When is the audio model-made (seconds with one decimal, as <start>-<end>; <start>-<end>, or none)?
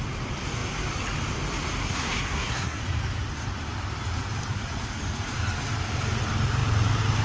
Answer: 1.8-2.8